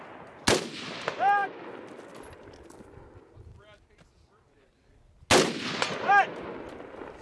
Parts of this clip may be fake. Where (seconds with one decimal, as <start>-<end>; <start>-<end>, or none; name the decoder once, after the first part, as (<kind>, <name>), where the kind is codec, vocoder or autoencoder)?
none